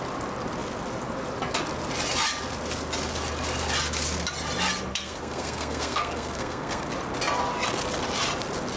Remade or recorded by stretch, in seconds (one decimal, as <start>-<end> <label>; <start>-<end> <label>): 0.0-4.9 recorded; 4.9-6.9 remade; 6.9-8.8 recorded